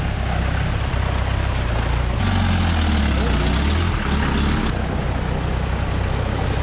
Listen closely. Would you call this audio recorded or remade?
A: recorded